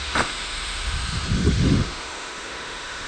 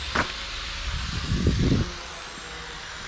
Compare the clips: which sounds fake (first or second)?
first